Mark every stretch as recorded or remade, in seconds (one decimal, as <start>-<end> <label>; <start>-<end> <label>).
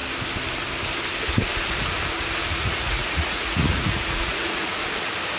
0.0-2.5 recorded; 2.5-4.8 remade; 4.8-5.4 recorded